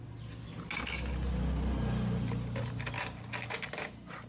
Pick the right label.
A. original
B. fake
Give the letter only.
A